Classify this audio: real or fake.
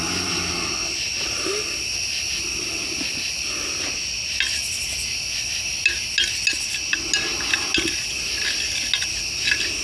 real